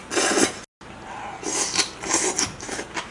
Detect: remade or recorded recorded